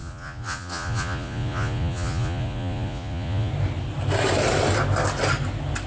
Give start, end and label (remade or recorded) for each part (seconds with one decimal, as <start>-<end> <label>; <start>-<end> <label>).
0.0-3.5 remade; 3.5-5.9 recorded